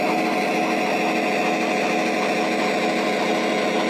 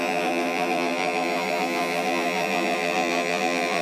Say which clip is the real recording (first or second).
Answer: first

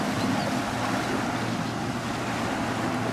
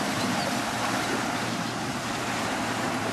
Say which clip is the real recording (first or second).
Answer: first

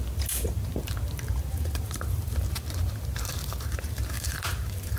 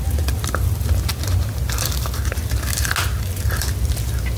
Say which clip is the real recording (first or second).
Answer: second